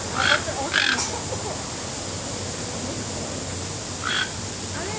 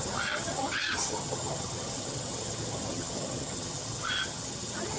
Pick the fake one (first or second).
second